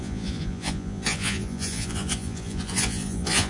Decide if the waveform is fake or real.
fake